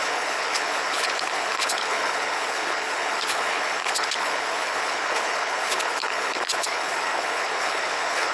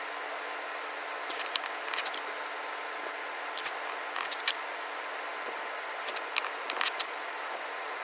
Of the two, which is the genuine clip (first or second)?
second